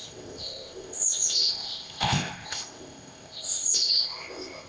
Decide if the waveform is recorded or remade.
remade